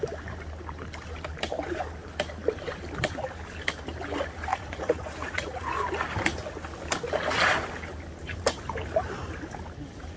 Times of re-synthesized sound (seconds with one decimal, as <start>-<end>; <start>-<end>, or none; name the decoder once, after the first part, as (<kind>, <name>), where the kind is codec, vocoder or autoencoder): 4.5-5.8 (vocoder, Vocos)